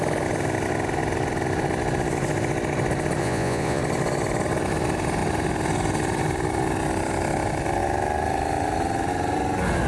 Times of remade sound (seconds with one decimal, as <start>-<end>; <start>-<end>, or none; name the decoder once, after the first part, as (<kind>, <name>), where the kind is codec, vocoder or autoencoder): 3.2-3.8 (vocoder, Vocos)